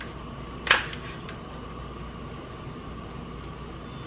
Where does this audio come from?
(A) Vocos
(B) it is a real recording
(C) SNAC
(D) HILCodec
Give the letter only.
B